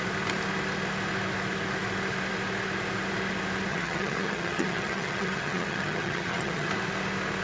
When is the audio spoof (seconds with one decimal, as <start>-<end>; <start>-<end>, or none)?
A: 3.7-6.7

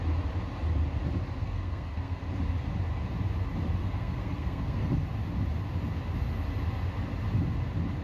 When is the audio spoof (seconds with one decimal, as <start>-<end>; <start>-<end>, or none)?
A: 1.4-2.2; 3.8-4.9

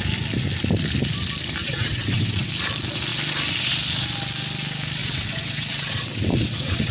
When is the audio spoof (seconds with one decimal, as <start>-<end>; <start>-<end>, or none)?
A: 1.6-2.5; 5.0-6.9

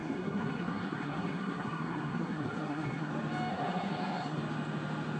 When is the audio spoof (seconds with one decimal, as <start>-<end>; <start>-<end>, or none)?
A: 0.0-3.1; 3.5-4.4

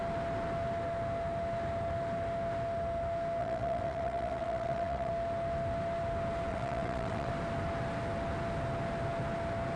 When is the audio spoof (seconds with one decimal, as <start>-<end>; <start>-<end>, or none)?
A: 3.4-5.1; 6.5-7.3

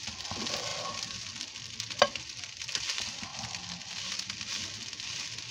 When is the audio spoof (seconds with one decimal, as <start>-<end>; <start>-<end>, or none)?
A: none

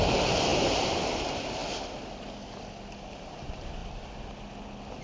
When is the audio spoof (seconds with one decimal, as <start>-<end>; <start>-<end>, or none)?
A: 0.0-1.6; 3.2-3.8

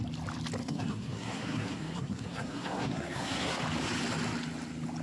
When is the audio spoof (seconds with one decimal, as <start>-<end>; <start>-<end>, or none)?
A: 0.6-3.6